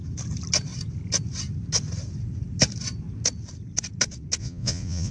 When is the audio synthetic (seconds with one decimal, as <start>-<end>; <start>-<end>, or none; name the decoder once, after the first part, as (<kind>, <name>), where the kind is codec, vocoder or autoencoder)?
4.4-5.1 (vocoder, Vocos)